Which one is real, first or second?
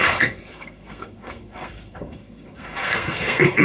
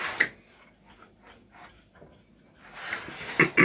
second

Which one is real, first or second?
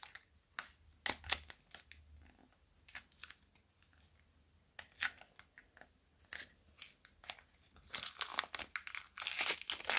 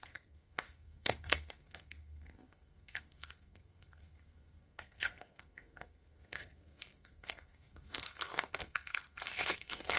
first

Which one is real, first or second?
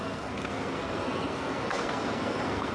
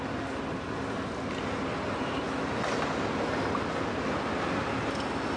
second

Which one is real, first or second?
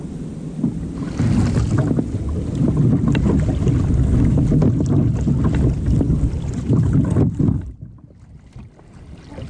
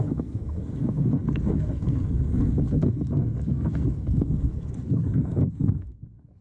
first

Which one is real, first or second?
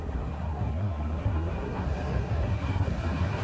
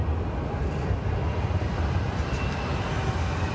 second